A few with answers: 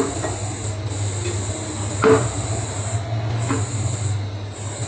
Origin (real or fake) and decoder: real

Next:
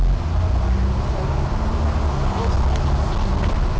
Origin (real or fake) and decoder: real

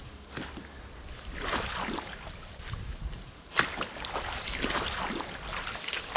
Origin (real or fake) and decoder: real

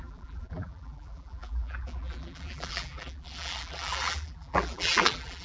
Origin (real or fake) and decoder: fake, vocoder, BigVGAN v2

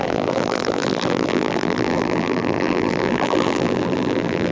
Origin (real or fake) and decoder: fake, vocoder, BigVGAN v2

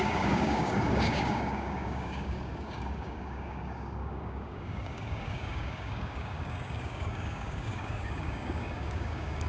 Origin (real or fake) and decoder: fake, codec, DAC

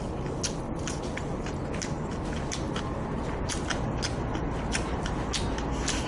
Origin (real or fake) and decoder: real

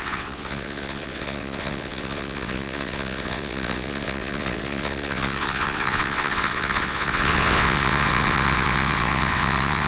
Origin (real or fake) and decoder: fake, vocoder, WaveNeXt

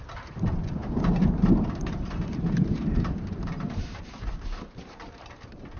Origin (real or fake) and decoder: fake, vocoder, BigVGAN v2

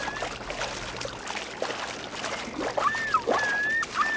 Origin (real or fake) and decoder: real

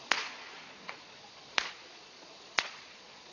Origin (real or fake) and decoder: fake, vocoder, Vocos